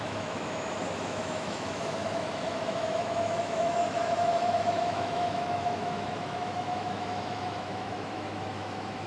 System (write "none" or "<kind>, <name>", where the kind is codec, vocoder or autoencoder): autoencoder, DAC-VAE